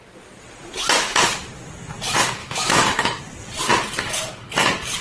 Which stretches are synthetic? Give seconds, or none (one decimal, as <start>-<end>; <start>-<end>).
2.4-3.2